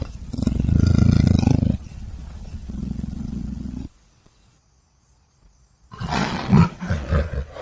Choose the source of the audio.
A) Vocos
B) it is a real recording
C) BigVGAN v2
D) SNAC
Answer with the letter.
A